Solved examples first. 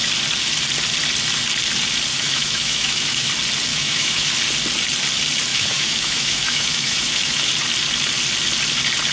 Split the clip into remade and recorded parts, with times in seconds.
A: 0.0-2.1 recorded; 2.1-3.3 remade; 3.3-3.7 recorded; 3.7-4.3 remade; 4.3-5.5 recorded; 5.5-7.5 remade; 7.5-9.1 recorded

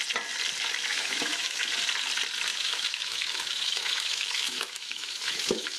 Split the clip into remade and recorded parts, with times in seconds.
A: 0.0-0.9 recorded; 0.9-1.7 remade; 1.7-2.5 recorded; 2.5-5.8 remade

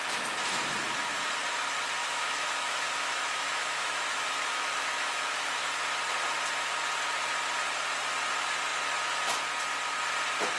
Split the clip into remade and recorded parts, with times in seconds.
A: 0.0-2.0 recorded; 2.0-5.5 remade; 5.5-10.6 recorded

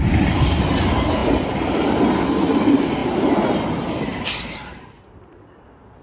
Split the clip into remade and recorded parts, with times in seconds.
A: 0.0-6.0 recorded

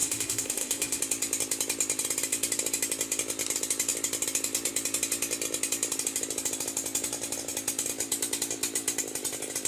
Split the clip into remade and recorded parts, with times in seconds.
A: 0.0-1.0 remade; 1.0-9.7 recorded

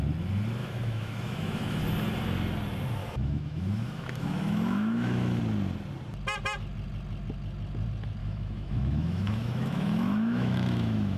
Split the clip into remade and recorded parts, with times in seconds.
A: 0.0-0.6 recorded; 0.6-1.8 remade; 1.8-3.0 recorded; 3.0-5.4 remade; 5.4-8.2 recorded; 8.2-11.2 remade

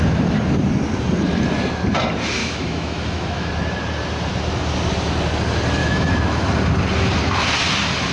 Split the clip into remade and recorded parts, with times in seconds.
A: 0.0-2.4 recorded; 2.4-3.5 remade; 3.5-5.8 recorded; 5.8-6.5 remade; 6.5-8.1 recorded

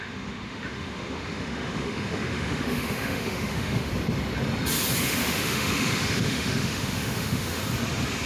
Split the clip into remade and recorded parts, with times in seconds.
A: 0.0-3.9 remade; 3.9-5.0 recorded; 5.0-7.6 remade; 7.6-8.3 recorded